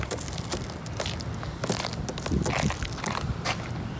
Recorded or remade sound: recorded